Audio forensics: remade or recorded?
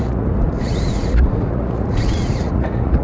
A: remade